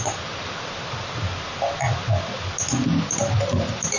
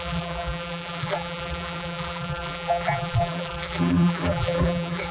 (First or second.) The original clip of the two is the first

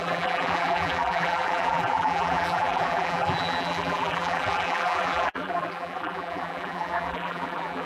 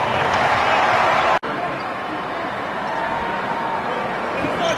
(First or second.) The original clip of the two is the second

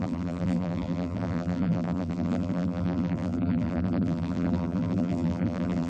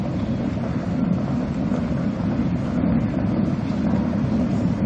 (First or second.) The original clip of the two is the second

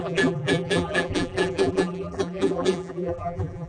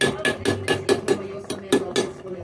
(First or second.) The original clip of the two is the second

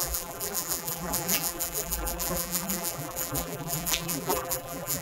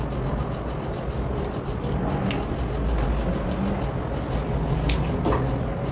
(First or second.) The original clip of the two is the second